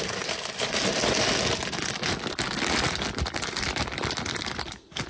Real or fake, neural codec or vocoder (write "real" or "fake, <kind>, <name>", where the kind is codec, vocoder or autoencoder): real